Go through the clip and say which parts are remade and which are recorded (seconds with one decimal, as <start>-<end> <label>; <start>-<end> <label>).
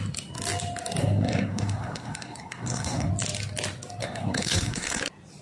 0.0-1.0 recorded; 1.0-3.1 remade; 3.1-4.0 recorded; 4.0-5.0 remade; 5.0-5.4 recorded